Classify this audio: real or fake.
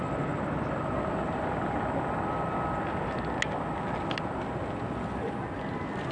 real